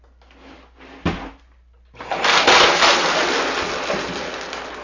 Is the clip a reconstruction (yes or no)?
no